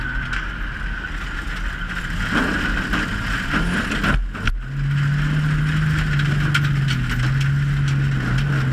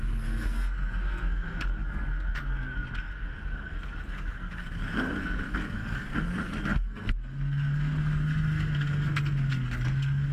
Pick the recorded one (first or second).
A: first